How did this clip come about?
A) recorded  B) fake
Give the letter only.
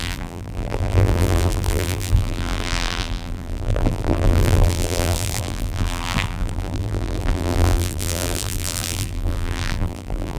B